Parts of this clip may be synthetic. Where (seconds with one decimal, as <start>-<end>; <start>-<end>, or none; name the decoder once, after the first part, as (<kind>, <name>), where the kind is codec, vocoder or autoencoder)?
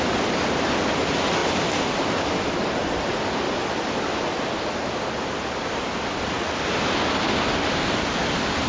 none